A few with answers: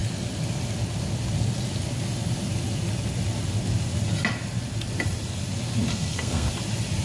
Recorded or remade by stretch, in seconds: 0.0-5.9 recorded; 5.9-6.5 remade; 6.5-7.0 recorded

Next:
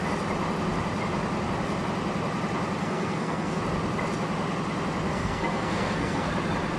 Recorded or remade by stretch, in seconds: 0.0-2.8 recorded; 2.8-3.6 remade; 3.6-5.1 recorded; 5.1-6.3 remade; 6.3-6.8 recorded

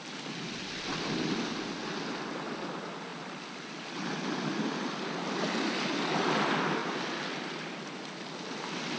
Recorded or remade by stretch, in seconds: 0.0-9.0 recorded

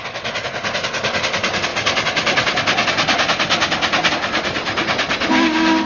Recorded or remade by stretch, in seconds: 0.0-5.9 recorded

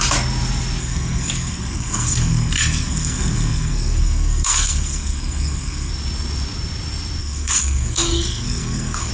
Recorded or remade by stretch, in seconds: 0.0-0.8 recorded; 0.8-5.9 remade; 5.9-7.2 recorded; 7.2-9.1 remade